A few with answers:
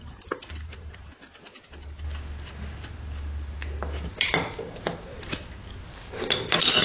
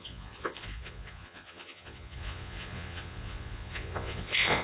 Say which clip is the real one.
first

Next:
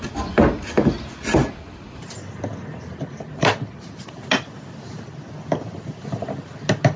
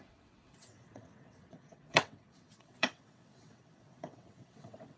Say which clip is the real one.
first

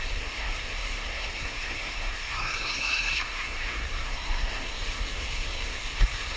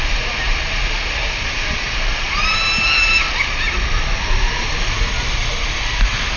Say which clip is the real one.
second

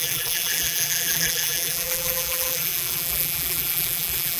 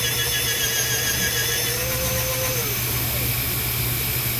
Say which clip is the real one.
second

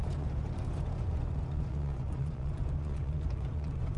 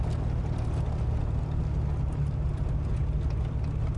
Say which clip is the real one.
second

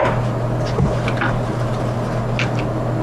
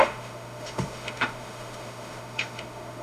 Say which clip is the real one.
first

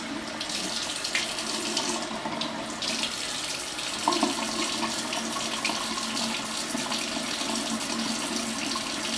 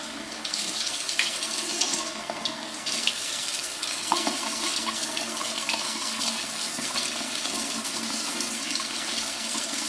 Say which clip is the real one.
first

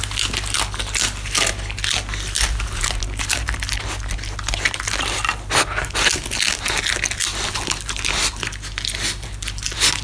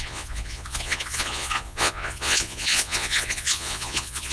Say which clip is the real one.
first